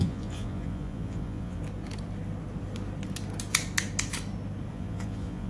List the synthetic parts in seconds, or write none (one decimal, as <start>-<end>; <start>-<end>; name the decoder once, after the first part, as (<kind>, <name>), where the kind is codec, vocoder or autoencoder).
0.0-1.6 (vocoder, Vocos); 4.7-5.5